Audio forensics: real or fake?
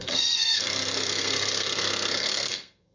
fake